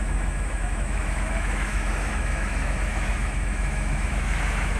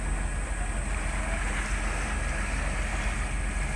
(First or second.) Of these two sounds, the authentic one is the second